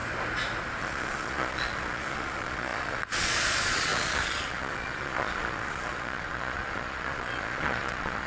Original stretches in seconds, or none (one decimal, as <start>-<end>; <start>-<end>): 0.0-0.8